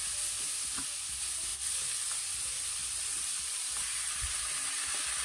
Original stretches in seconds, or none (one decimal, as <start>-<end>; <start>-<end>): 0.0-5.2